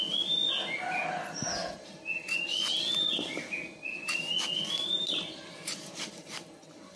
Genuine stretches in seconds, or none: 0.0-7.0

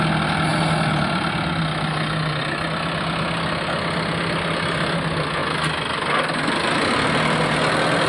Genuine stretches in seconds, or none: 0.0-8.1